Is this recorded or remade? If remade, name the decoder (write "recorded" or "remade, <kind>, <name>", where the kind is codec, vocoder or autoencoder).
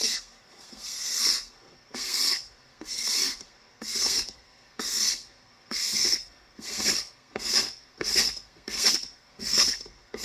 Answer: remade, codec, SNAC